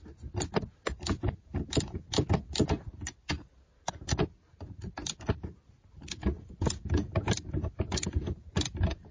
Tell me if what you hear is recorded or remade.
recorded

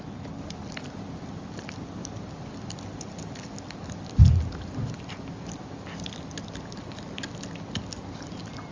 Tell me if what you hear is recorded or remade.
recorded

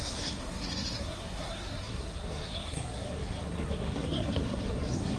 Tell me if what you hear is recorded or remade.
remade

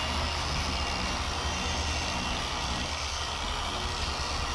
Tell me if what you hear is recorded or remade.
recorded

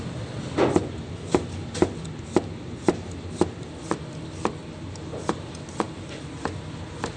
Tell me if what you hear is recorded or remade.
recorded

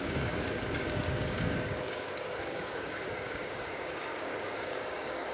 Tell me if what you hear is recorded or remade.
remade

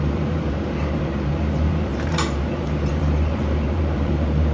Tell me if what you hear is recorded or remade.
remade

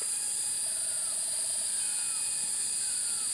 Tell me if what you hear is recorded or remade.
recorded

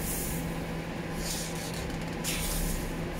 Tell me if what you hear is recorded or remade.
recorded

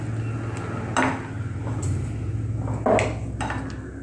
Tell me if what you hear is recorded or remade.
recorded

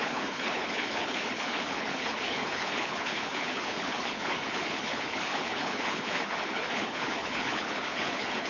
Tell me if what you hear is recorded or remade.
remade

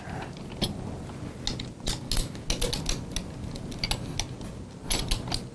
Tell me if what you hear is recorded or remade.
recorded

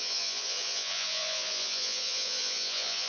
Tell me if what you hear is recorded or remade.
remade